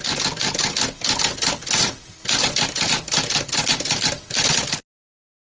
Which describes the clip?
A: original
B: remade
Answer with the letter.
A